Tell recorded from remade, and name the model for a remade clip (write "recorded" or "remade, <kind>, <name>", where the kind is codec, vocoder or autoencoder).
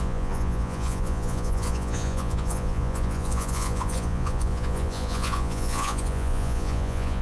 remade, vocoder, Vocos